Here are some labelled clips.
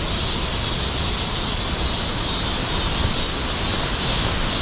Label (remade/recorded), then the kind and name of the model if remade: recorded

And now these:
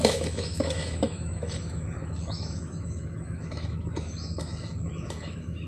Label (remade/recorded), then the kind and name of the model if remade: remade, autoencoder, DAC-VAE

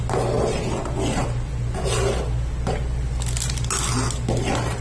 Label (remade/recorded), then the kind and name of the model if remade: recorded